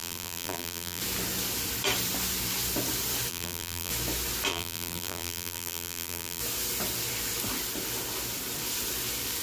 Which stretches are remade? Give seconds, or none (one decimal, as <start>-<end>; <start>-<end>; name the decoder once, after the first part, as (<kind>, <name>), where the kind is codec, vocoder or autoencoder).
0.0-1.0 (vocoder, BigVGAN v2); 3.3-3.9; 4.5-6.4